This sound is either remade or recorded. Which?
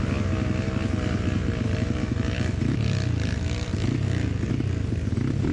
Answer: recorded